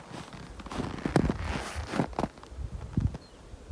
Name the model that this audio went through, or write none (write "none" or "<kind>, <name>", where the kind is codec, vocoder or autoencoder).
none